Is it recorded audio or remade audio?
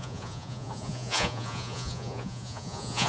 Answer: remade